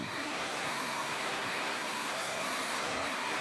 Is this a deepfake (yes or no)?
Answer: yes